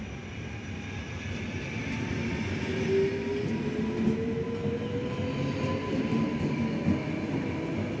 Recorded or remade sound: recorded